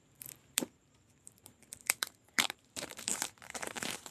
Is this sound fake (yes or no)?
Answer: yes